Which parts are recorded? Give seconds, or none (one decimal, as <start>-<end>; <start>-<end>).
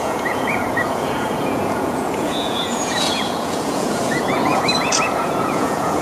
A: none